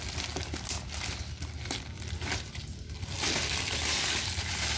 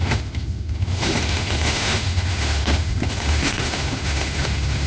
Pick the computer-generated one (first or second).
second